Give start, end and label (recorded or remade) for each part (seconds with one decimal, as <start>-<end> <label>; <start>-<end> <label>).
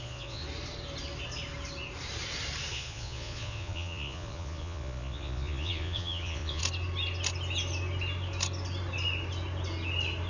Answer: 0.0-0.4 remade; 0.4-2.7 recorded; 2.7-6.6 remade; 6.6-10.3 recorded